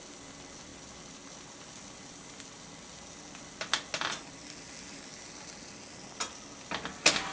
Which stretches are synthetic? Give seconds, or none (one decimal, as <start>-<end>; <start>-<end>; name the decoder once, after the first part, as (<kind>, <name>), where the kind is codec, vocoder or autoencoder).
none